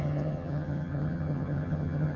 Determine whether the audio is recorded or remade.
remade